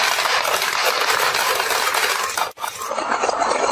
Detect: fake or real fake